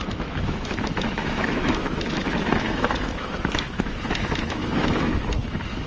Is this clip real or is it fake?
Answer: fake